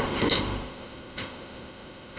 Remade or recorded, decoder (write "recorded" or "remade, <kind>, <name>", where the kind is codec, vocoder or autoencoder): remade, autoencoder, DAC-VAE